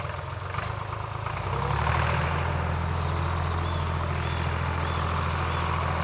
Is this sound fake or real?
real